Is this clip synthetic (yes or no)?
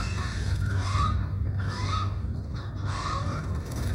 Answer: yes